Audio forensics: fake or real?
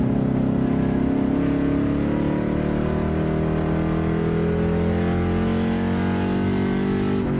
real